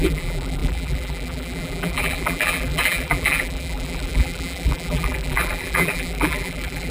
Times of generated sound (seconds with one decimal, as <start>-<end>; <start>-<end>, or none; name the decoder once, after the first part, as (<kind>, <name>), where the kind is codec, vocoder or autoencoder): 0.0-6.9 (vocoder, BigVGAN v2)